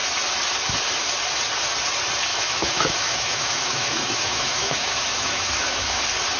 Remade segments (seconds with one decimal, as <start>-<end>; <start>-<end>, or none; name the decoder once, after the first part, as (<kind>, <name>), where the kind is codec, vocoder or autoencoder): 2.3-6.0 (autoencoder, DAC-VAE)